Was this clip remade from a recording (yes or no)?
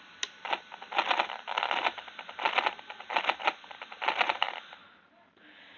no